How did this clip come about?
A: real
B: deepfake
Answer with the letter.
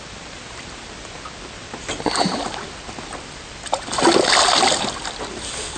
A